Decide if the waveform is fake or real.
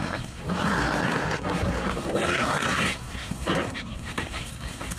fake